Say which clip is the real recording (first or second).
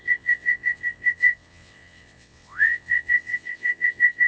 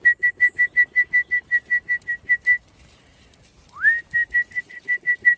second